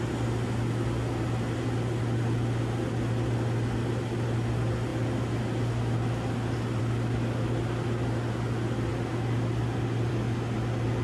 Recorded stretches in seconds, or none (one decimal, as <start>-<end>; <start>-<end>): 0.0-11.0